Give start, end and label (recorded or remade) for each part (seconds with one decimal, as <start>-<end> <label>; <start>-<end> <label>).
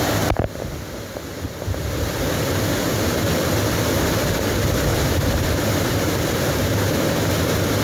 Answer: 0.0-4.9 recorded; 4.9-7.3 remade; 7.3-7.8 recorded